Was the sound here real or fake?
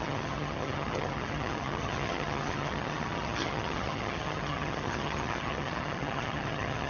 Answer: fake